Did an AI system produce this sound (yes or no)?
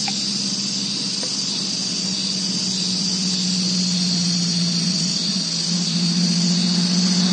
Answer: no